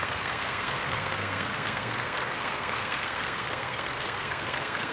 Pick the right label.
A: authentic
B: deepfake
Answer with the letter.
B